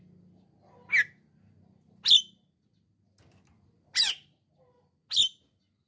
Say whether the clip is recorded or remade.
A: recorded